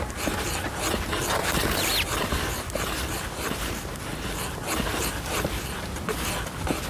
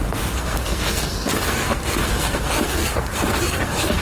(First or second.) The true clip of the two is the first